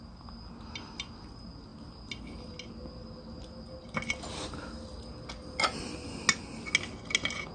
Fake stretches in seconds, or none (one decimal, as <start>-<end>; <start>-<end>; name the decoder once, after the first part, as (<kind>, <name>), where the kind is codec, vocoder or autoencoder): none